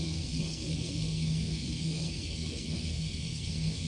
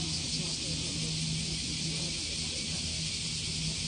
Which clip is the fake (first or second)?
first